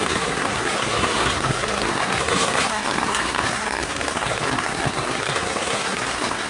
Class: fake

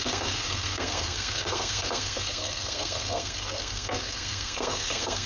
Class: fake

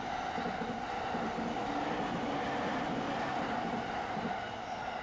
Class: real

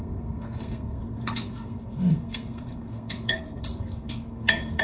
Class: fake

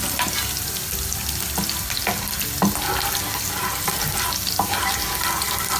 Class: real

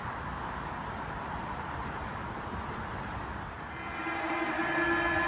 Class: real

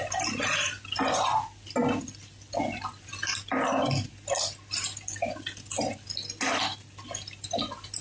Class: real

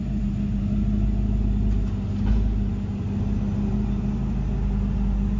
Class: real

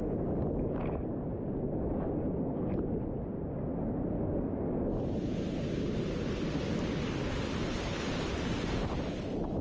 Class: real